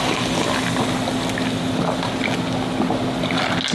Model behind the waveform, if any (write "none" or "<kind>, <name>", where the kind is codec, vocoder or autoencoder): none